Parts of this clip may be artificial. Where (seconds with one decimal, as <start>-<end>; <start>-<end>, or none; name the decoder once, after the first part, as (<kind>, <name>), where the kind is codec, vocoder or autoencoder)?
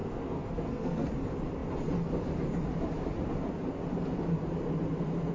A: 0.0-1.1 (codec, SNAC)